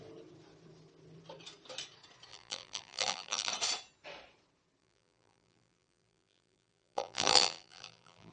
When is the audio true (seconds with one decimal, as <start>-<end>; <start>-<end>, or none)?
0.0-2.3; 3.5-4.8